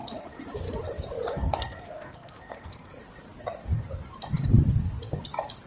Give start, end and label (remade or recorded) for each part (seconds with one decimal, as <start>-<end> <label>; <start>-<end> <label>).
0.0-1.3 recorded; 1.3-3.0 remade; 3.0-5.7 recorded